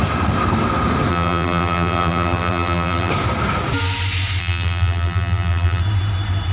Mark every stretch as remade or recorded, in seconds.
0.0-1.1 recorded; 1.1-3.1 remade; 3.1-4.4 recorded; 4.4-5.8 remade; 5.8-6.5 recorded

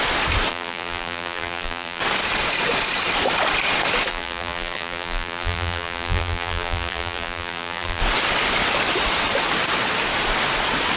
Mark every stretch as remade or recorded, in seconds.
0.0-0.5 recorded; 0.5-2.0 remade; 2.0-4.1 recorded; 4.1-8.0 remade; 8.0-11.0 recorded

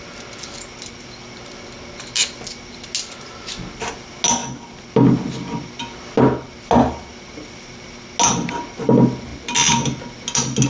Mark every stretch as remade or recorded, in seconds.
0.0-10.7 recorded

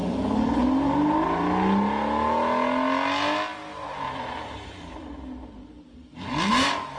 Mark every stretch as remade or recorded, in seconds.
0.0-1.2 remade; 1.2-3.5 recorded; 3.5-5.1 remade; 5.1-5.9 recorded; 5.9-6.5 remade; 6.5-7.0 recorded

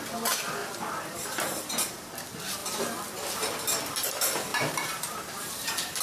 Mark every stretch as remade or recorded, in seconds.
0.0-0.6 recorded; 0.6-2.1 remade; 2.1-4.5 recorded; 4.5-6.0 remade

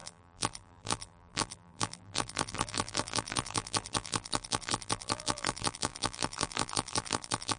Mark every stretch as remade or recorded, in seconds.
0.0-7.6 remade

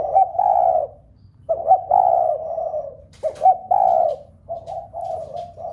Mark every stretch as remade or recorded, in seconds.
0.0-5.7 remade